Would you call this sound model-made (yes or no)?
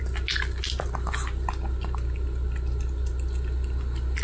no